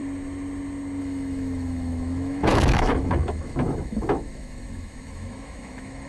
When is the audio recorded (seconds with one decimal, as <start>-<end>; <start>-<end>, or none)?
0.0-1.0